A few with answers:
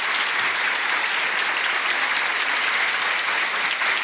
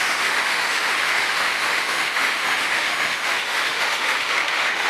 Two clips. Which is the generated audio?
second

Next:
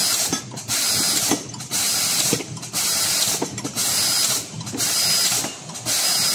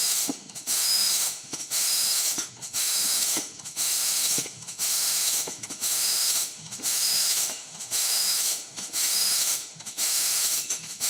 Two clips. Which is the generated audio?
second